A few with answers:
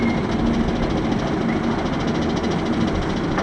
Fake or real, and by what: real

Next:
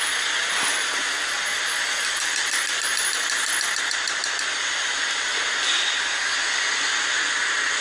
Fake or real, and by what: real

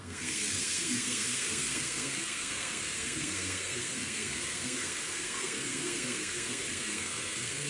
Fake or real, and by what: fake, codec, SNAC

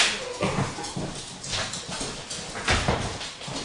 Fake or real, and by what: real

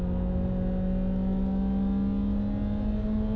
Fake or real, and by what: real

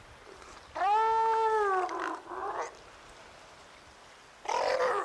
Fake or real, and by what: real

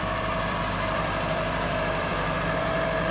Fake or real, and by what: fake, vocoder, BigVGAN v2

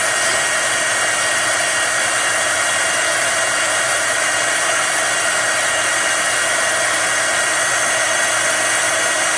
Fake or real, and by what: fake, vocoder, BigVGAN v2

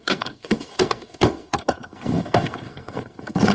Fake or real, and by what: fake, codec, SNAC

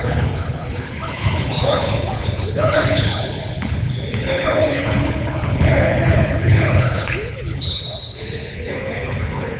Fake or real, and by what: fake, codec, HILCodec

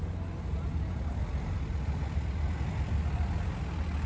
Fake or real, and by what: real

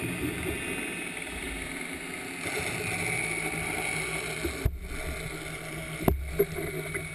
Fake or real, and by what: real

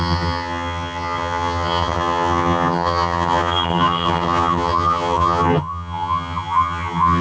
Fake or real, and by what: fake, vocoder, HiFi-GAN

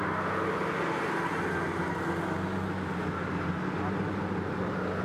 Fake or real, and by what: real